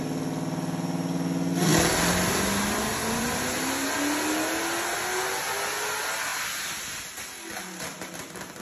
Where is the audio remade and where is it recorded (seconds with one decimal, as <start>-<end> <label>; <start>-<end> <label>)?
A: 0.0-1.7 recorded; 1.7-2.3 remade; 2.3-2.9 recorded; 2.9-3.4 remade; 3.4-8.6 recorded